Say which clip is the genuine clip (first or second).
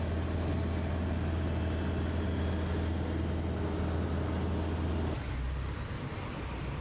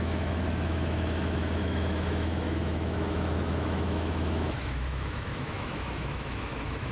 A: first